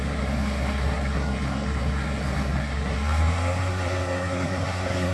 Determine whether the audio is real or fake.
fake